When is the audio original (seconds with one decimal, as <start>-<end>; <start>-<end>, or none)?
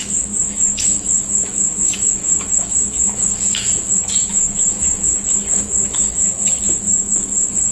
none